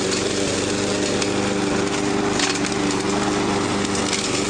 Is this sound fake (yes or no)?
no